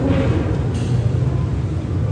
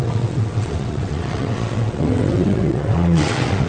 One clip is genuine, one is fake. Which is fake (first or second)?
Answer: second